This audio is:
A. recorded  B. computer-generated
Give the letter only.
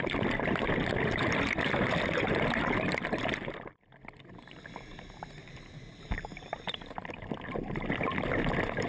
A